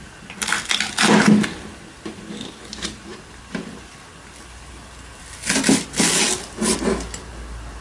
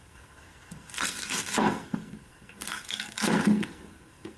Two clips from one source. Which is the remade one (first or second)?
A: second